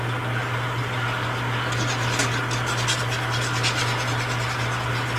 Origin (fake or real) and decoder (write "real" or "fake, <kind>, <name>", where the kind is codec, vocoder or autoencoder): real